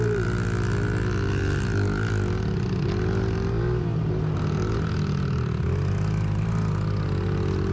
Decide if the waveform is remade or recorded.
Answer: recorded